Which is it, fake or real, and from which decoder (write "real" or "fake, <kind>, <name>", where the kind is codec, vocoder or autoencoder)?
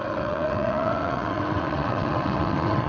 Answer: fake, vocoder, WaveNeXt